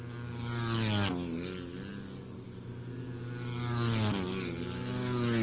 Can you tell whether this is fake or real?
real